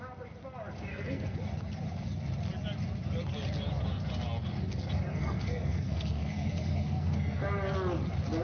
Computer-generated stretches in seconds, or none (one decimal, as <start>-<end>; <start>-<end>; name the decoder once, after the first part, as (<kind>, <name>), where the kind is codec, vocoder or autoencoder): 0.9-1.4 (codec, SNAC); 5.1-7.4